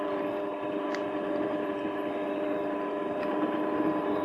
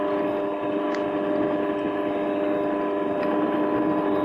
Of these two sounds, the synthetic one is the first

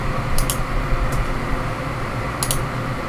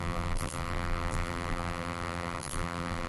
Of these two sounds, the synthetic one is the second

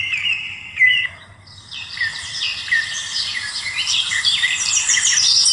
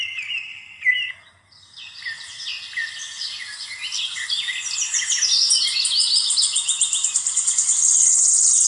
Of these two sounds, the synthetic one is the first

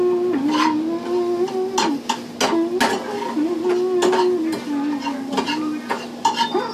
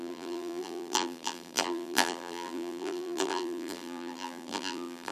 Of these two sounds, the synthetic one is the second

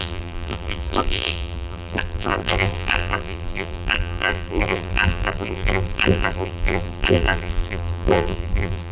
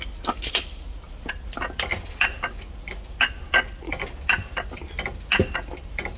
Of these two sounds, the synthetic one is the first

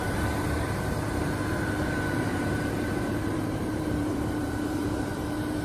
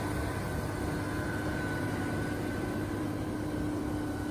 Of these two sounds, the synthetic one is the first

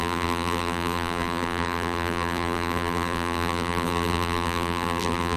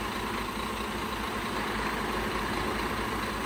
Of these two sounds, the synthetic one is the first